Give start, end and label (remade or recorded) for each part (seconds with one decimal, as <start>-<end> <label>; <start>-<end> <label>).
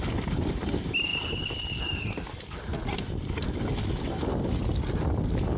0.0-5.6 recorded